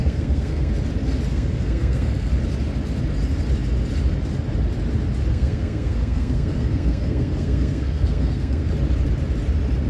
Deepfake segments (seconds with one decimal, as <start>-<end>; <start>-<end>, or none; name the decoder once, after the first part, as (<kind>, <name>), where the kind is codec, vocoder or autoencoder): 0.0-0.7 (codec, SNAC); 1.3-2.3; 5.3-8.7